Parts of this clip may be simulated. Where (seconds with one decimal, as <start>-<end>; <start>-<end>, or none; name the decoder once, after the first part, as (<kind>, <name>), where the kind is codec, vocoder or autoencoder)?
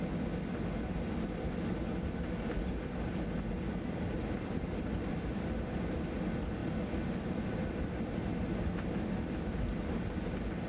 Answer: none